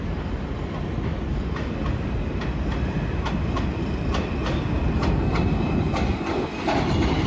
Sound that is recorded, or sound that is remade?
recorded